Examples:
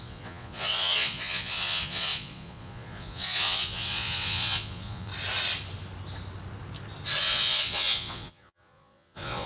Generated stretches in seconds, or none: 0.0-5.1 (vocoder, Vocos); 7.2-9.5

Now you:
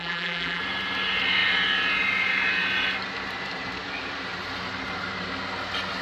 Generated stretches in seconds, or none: 0.0-0.6 (vocoder, BigVGAN v2)

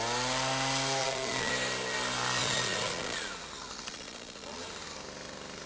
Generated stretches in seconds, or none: 1.0-1.5 (vocoder, Vocos); 2.4-3.3; 3.9-4.6